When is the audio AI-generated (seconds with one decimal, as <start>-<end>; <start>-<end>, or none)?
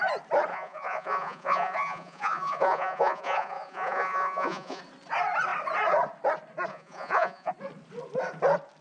0.5-4.8; 6.7-7.5